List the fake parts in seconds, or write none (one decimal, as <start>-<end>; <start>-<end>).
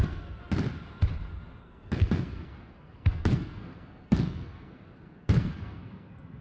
0.0-0.4; 1.6-6.4